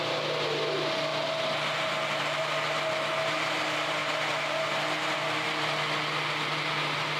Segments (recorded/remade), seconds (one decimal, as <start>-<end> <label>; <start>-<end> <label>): 0.0-7.2 recorded